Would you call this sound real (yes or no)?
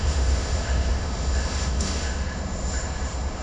no